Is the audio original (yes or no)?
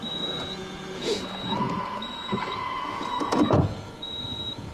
no